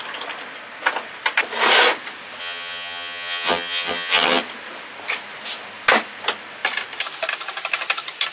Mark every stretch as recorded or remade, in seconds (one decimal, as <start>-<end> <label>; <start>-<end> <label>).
0.0-2.4 recorded; 2.4-4.4 remade; 4.4-8.3 recorded